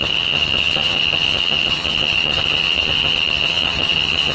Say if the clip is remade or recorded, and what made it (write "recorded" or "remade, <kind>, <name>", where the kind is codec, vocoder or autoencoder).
remade, vocoder, HiFi-GAN